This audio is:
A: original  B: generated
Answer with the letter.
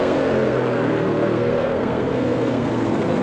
B